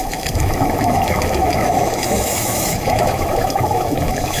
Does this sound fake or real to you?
fake